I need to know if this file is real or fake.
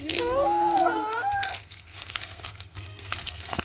fake